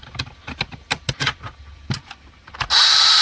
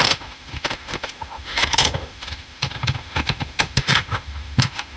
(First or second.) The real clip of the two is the first